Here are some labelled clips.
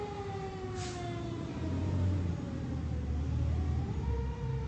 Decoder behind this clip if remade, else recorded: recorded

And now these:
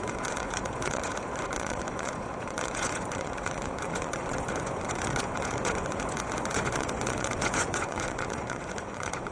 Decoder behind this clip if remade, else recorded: remade, vocoder, Vocos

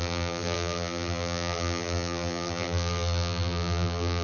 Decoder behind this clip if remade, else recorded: remade, vocoder, BigVGAN v2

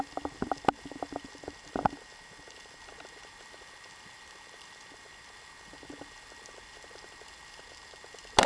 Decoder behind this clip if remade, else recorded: recorded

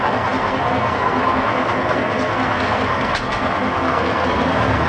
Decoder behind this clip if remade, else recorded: remade, codec, SNAC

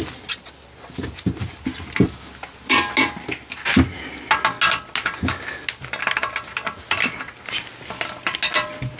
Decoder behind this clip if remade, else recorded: recorded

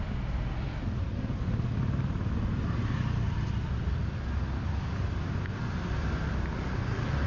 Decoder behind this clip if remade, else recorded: recorded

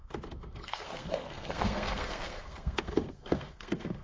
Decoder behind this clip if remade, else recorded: remade, codec, SNAC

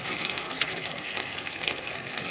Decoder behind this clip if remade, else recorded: remade, codec, SNAC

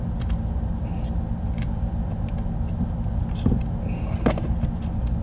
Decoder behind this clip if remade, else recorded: recorded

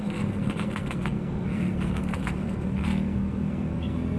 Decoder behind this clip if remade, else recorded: remade, codec, SNAC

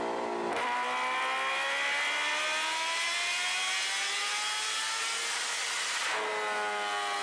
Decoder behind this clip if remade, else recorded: recorded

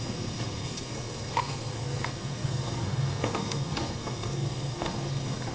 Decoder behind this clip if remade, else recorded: remade, codec, SNAC